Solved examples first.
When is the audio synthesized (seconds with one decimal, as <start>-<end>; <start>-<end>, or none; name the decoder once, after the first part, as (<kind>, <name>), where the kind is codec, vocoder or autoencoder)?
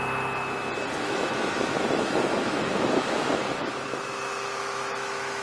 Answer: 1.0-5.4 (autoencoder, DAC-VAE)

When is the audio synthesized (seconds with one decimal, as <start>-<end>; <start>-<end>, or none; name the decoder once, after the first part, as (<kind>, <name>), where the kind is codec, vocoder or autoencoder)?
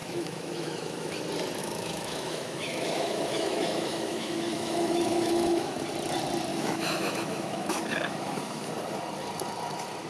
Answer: 0.0-1.2 (autoencoder, DAC-VAE); 1.6-5.8; 6.5-8.7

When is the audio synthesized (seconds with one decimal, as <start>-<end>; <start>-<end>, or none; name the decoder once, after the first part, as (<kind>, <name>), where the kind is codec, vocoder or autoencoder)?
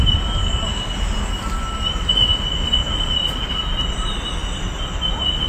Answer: none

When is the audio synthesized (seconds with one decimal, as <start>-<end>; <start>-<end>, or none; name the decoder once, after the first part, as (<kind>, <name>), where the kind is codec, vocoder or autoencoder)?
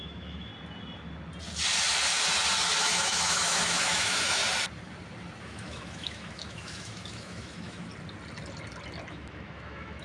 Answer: 0.0-0.5 (autoencoder, DAC-VAE); 2.8-4.4; 5.4-7.9; 9.1-10.0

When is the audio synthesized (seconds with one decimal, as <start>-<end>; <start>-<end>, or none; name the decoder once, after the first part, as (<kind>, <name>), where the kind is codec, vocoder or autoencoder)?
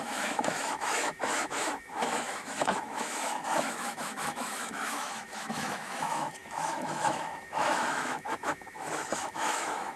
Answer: 0.0-10.0 (autoencoder, DAC-VAE)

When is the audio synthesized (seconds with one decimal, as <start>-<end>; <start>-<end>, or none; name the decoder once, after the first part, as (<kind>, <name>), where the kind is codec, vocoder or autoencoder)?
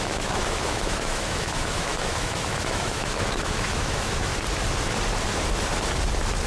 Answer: 0.0-4.3 (autoencoder, DAC-VAE)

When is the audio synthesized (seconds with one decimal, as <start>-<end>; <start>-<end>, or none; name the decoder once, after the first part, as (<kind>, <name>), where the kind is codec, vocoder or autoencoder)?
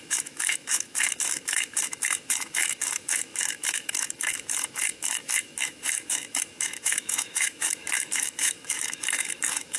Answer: 0.0-9.8 (autoencoder, DAC-VAE)